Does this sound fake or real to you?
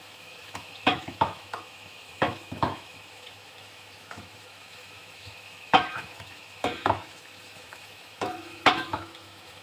fake